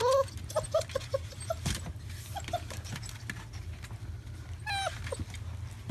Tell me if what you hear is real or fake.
real